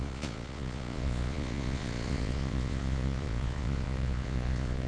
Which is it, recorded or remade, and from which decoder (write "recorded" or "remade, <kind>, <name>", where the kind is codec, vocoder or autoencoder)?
remade, vocoder, Vocos